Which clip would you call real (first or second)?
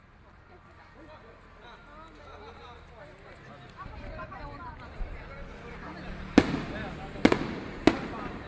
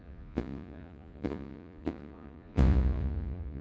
first